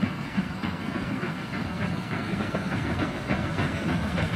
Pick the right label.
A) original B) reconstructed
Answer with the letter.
B